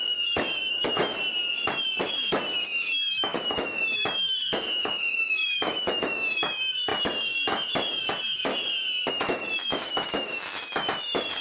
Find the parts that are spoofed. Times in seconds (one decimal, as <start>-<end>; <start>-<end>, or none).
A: 0.0-1.2; 2.0-8.5; 9.1-11.4